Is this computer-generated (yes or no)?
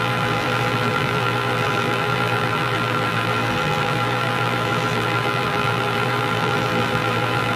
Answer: yes